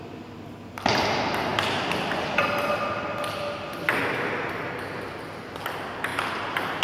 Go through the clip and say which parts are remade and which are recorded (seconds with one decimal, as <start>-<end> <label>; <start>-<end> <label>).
0.0-6.1 recorded; 6.1-6.8 remade

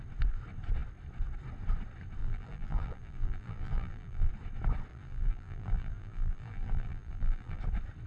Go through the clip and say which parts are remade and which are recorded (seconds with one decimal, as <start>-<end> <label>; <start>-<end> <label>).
0.0-2.2 recorded; 2.2-4.3 remade; 4.3-4.9 recorded; 4.9-7.6 remade; 7.6-8.1 recorded

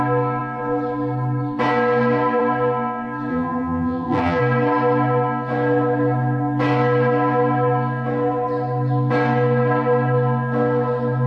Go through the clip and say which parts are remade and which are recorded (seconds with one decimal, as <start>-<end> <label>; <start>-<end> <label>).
0.0-3.3 recorded; 3.3-4.4 remade; 4.4-11.3 recorded

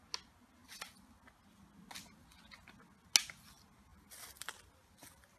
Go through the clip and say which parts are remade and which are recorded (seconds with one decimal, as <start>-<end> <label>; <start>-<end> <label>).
0.0-3.9 recorded; 3.9-4.5 remade; 4.5-5.4 recorded